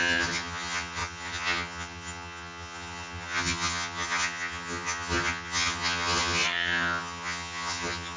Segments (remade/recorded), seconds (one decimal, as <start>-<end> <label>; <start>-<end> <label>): 0.0-8.2 remade